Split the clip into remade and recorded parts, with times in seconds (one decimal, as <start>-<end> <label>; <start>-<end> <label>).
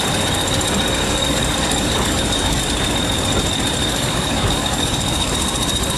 0.0-1.0 recorded; 1.0-2.6 remade; 2.6-3.8 recorded; 3.8-5.3 remade; 5.3-6.0 recorded